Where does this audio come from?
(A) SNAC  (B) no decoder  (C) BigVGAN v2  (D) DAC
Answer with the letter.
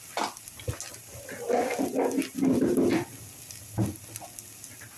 B